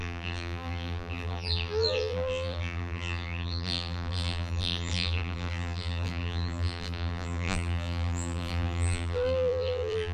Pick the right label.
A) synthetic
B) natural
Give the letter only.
A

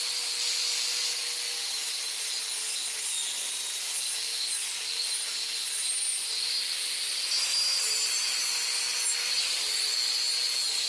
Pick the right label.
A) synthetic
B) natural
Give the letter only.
B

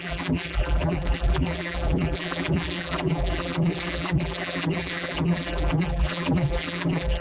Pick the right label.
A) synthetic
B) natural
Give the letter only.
A